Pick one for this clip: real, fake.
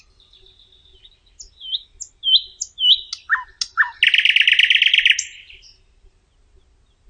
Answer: real